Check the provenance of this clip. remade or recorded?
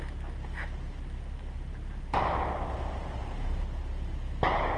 recorded